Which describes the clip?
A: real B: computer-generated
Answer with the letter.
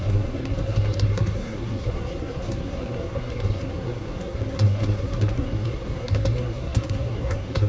B